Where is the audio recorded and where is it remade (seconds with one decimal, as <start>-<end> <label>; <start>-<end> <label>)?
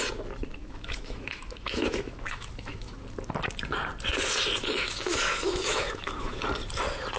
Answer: 0.0-0.6 recorded; 0.6-3.0 remade; 3.0-4.6 recorded; 4.6-6.4 remade; 6.4-7.2 recorded